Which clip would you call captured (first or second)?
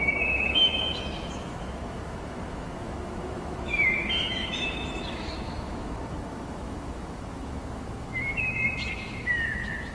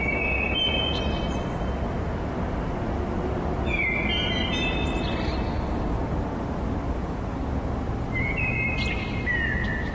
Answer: second